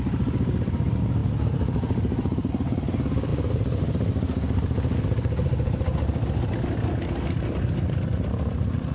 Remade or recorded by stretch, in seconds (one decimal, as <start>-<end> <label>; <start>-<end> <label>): 0.0-8.9 recorded